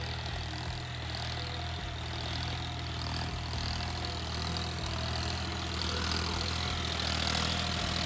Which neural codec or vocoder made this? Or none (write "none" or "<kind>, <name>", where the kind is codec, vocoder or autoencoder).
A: none